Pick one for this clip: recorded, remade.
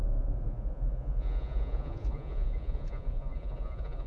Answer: remade